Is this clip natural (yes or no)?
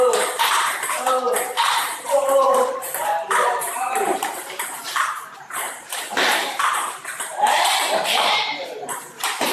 no